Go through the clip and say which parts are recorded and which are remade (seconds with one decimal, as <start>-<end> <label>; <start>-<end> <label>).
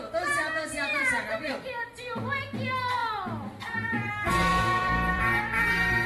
0.0-0.9 recorded; 0.9-1.9 remade; 1.9-3.0 recorded; 3.0-4.1 remade; 4.1-4.5 recorded; 4.5-5.2 remade; 5.2-6.1 recorded